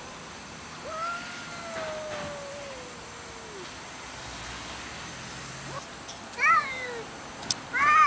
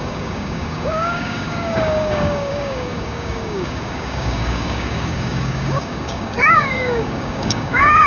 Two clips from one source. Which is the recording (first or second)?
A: first